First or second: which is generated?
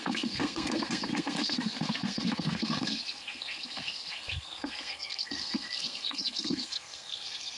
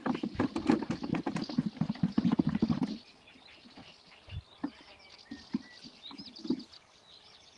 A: first